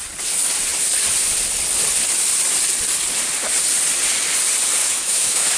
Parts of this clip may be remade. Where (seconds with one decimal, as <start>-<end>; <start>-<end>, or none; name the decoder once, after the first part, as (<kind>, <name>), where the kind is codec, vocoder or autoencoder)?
4.8-5.6 (autoencoder, DAC-VAE)